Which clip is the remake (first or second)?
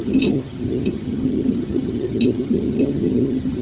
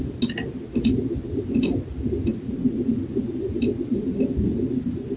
first